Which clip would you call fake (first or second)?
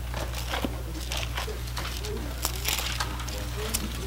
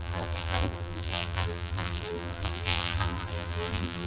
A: second